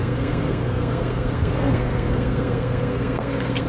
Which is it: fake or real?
fake